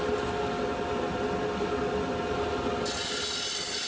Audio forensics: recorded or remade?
recorded